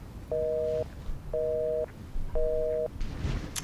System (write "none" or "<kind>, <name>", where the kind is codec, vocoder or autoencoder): none